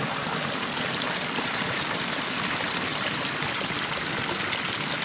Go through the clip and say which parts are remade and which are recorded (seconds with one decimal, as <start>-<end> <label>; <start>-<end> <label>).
0.0-5.0 recorded